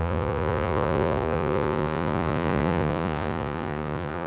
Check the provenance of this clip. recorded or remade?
remade